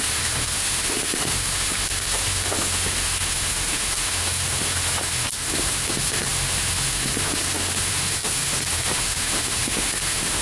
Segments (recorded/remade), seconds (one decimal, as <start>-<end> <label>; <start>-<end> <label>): 0.0-10.4 remade